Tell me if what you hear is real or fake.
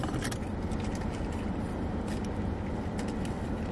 real